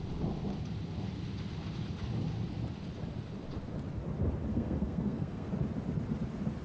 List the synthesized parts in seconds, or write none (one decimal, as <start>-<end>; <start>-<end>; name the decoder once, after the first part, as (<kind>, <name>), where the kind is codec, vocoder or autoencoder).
4.5-5.5 (codec, SNAC)